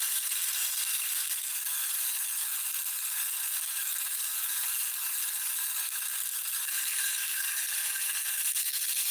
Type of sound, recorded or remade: remade